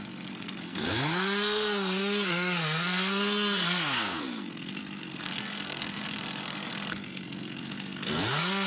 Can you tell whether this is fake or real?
fake